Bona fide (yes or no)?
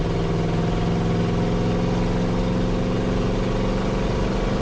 yes